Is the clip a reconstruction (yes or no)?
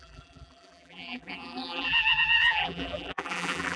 yes